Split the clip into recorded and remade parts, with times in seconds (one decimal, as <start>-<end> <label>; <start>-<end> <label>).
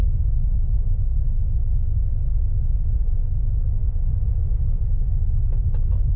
0.0-6.2 recorded